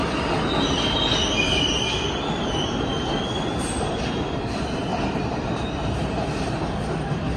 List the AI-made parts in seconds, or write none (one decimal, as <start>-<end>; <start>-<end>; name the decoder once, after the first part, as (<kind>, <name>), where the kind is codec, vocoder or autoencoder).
4.9-6.6 (vocoder, BigVGAN v2)